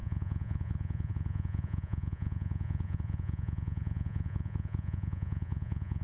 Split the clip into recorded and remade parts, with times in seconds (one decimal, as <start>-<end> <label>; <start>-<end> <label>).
0.0-6.0 remade